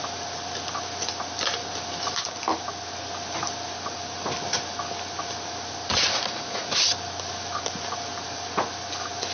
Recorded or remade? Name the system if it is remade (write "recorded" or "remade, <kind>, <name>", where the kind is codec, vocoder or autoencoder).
recorded